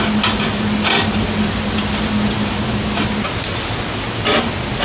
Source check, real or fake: real